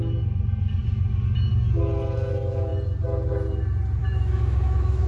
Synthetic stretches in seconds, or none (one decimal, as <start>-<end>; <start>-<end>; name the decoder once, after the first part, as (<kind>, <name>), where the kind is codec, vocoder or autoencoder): 4.0-5.1 (autoencoder, DAC-VAE)